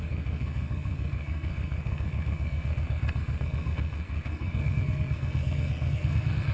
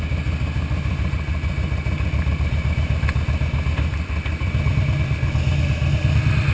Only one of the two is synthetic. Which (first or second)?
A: first